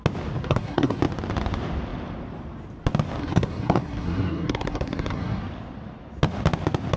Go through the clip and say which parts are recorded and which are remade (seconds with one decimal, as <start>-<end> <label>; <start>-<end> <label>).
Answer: 0.0-0.4 recorded; 0.4-1.0 remade; 1.0-3.2 recorded; 3.2-5.4 remade; 5.4-7.0 recorded